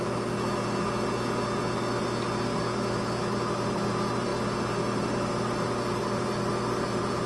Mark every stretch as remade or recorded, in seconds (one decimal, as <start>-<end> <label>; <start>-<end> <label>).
0.0-7.3 recorded